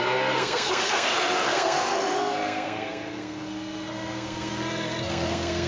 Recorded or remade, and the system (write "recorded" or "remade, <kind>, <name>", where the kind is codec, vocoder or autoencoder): remade, codec, SNAC